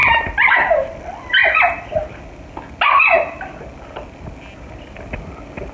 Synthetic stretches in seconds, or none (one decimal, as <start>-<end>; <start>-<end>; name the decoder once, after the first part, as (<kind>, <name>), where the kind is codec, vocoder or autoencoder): none